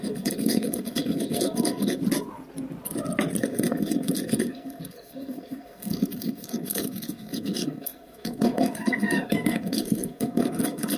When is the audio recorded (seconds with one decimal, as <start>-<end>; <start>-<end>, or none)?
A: 2.0-3.4